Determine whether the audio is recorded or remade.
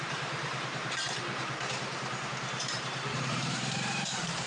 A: remade